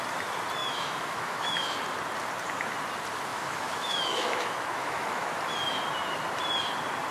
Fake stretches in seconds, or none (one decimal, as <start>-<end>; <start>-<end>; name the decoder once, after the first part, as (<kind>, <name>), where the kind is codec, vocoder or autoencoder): 0.6-1.8 (autoencoder, DAC-VAE); 3.3-5.3